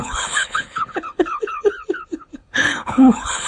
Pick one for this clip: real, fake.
fake